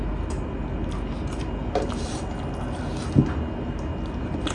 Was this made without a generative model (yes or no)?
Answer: yes